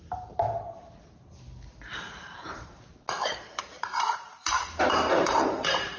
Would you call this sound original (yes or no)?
yes